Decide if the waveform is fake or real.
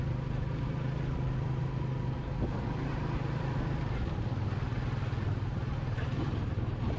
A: real